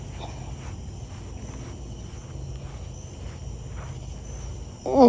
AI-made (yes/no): no